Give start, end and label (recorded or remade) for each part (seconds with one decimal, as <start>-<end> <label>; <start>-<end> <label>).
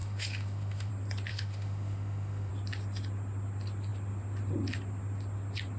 0.0-0.9 remade; 0.9-1.3 recorded; 1.3-2.5 remade; 2.5-5.8 recorded